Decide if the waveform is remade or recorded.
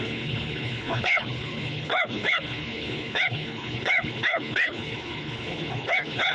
remade